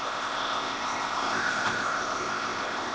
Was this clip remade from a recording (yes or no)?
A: yes